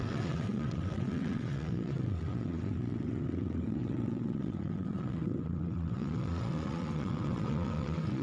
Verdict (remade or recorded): remade